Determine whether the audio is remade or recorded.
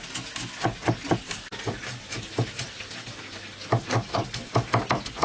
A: recorded